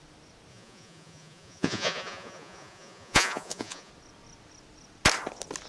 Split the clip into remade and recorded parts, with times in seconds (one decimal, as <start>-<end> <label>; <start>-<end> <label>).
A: 0.0-0.5 recorded; 0.5-3.9 remade; 3.9-5.7 recorded